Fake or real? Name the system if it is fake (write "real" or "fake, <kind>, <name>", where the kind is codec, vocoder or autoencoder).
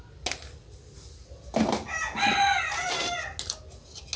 real